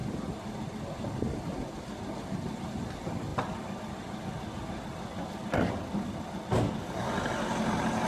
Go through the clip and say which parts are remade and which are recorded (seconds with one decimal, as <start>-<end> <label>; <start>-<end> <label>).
0.0-8.1 recorded